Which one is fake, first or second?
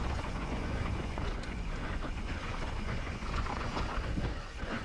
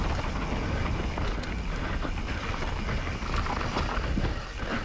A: first